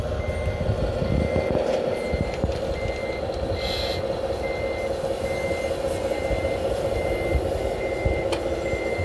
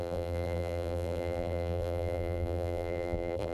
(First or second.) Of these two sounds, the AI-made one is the second